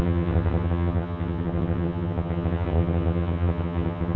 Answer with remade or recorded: remade